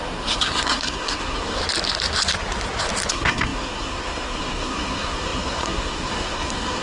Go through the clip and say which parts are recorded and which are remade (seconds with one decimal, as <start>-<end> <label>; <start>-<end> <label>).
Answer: 0.0-1.6 remade; 1.6-3.1 recorded; 3.1-6.8 remade